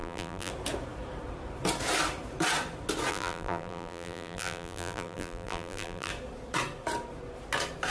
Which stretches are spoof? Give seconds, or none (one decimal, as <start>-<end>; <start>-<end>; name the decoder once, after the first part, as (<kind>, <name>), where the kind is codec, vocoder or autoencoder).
0.0-0.5 (vocoder, BigVGAN v2); 3.1-6.1